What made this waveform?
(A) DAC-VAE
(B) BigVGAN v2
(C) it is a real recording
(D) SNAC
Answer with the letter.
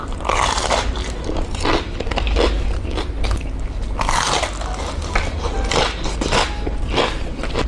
C